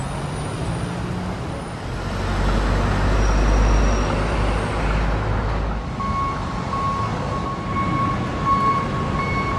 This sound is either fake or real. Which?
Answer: real